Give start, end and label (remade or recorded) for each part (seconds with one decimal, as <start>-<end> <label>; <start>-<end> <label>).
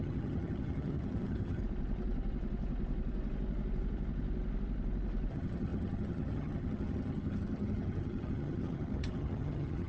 0.0-1.6 remade; 1.6-5.3 recorded; 5.3-9.9 remade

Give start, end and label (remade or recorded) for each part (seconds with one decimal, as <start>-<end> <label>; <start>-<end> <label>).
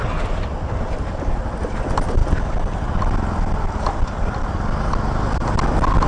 0.0-6.1 recorded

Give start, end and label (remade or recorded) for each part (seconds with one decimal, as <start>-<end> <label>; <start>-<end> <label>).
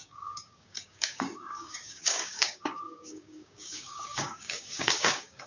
0.0-5.5 remade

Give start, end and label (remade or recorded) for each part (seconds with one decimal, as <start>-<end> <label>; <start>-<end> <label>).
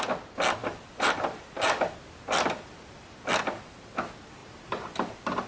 0.0-0.6 recorded; 0.6-3.1 remade; 3.1-4.4 recorded; 4.4-5.1 remade; 5.1-5.5 recorded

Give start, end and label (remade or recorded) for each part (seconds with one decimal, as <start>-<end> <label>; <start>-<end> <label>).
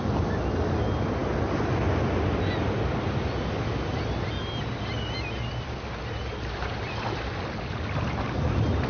0.0-8.9 recorded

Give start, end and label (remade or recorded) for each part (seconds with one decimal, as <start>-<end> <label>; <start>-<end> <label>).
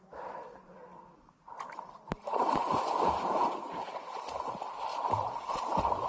0.0-2.6 recorded; 2.6-3.9 remade; 3.9-4.9 recorded; 4.9-6.1 remade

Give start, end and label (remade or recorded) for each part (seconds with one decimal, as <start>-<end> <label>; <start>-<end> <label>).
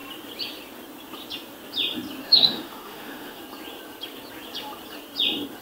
0.0-2.2 recorded; 2.2-3.4 remade; 3.4-5.6 recorded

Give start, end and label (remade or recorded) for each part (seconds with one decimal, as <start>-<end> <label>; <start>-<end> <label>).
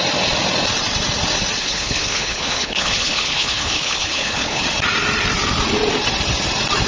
0.0-1.6 recorded; 1.6-4.6 remade; 4.6-6.9 recorded